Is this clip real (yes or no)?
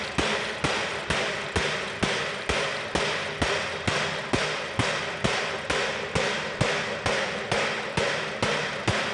yes